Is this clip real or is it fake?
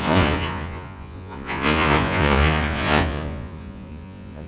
fake